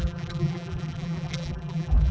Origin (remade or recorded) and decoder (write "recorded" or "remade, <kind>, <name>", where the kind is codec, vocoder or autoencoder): remade, vocoder, BigVGAN v2